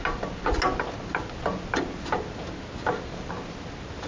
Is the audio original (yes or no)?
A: yes